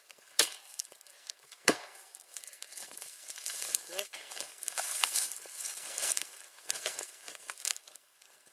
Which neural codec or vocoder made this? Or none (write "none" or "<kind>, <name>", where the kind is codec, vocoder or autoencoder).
codec, SNAC